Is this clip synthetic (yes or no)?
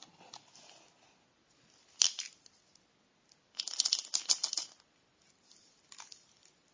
no